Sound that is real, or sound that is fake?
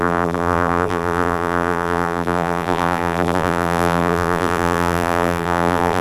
fake